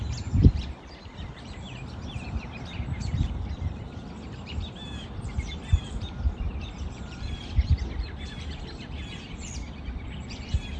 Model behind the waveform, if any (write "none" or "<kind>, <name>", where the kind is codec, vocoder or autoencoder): vocoder, BigVGAN v2